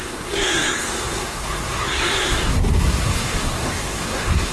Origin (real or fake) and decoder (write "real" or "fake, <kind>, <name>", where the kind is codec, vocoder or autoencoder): fake, codec, SNAC